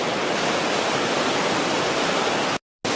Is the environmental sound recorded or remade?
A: recorded